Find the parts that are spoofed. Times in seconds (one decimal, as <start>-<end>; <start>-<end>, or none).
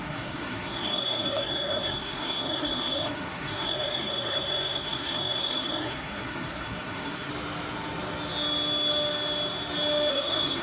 0.0-7.3; 10.1-10.6